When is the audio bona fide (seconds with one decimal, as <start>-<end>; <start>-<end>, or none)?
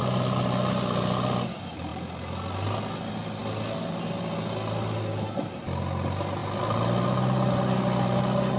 0.0-8.6